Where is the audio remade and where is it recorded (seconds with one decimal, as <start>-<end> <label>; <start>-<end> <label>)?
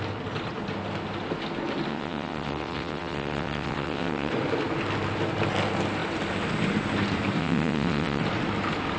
0.0-1.9 recorded; 1.9-4.3 remade; 4.3-7.4 recorded; 7.4-8.2 remade; 8.2-9.0 recorded